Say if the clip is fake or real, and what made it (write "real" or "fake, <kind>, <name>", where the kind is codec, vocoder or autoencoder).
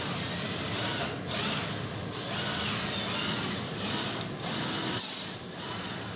real